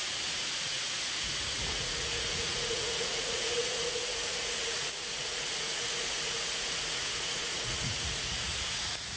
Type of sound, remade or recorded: remade